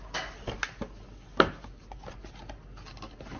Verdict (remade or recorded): recorded